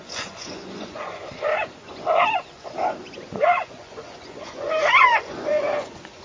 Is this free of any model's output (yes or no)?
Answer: no